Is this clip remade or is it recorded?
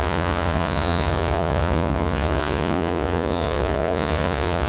remade